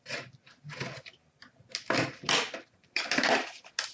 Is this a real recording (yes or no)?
yes